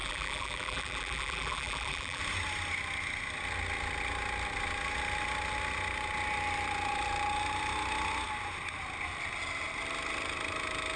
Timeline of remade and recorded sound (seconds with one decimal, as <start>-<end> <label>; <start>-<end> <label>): 0.0-2.2 remade; 2.2-11.0 recorded